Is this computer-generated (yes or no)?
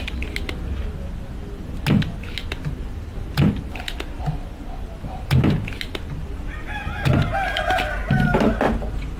no